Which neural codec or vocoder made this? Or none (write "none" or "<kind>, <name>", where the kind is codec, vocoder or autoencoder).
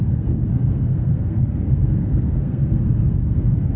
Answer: codec, SNAC